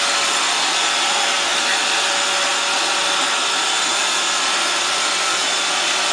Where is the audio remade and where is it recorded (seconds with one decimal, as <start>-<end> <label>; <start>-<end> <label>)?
0.0-6.1 recorded